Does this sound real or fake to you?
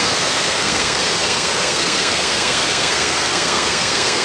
fake